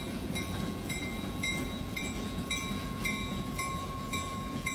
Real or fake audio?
fake